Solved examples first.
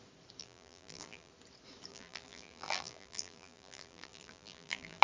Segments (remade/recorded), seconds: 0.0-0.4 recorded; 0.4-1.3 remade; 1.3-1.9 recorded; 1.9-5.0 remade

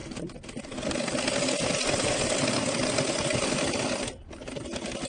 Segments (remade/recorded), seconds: 0.0-5.1 recorded

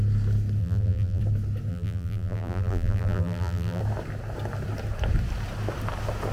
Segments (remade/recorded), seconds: 0.0-0.6 recorded; 0.6-1.2 remade; 1.2-1.7 recorded; 1.7-3.8 remade; 3.8-6.3 recorded

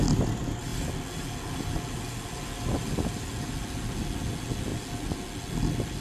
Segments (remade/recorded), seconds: 0.0-6.0 recorded

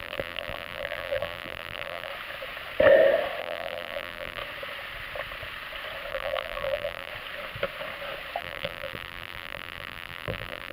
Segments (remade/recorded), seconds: 0.0-2.1 remade; 2.1-3.4 recorded; 3.4-4.4 remade; 4.4-6.1 recorded; 6.1-7.1 remade; 7.1-8.4 recorded; 8.4-10.7 remade

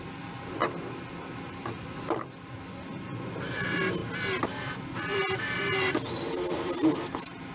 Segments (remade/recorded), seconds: 0.0-0.6 remade; 0.6-1.3 recorded; 1.3-4.0 remade; 4.0-4.7 recorded; 4.7-7.5 remade

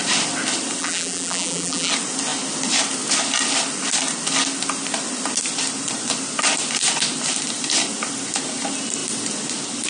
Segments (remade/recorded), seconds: 0.0-0.8 recorded; 0.8-1.9 remade; 1.9-9.9 recorded